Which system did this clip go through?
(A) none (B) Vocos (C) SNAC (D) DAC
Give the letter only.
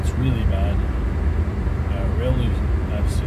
A